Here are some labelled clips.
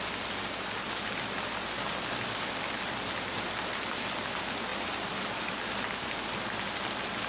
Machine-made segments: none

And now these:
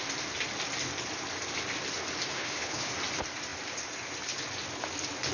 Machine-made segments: 2.3-2.9 (codec, HILCodec)

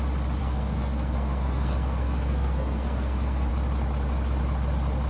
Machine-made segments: 0.4-3.5 (codec, SNAC)

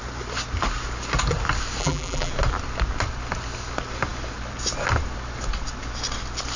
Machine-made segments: 1.8-2.3 (vocoder, BigVGAN v2)

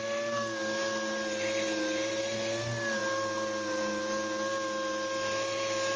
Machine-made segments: none

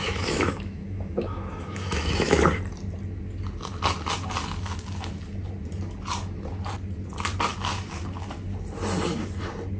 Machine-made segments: 0.0-2.4 (autoencoder, DAC-VAE)

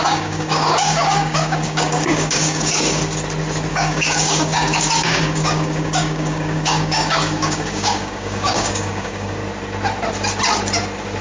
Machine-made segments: 0.0-3.0 (codec, DAC); 3.7-9.4

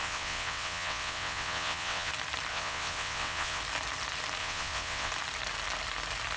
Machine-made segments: 0.0-2.1 (vocoder, WaveNeXt); 2.5-3.6; 4.4-5.1